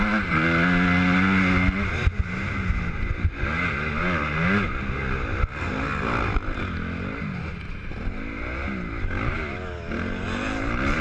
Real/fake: real